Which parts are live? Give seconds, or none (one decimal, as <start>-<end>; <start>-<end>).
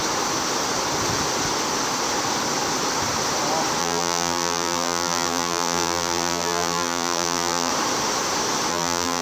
0.0-3.8; 7.7-8.7